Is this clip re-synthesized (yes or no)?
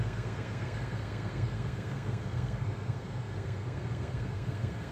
yes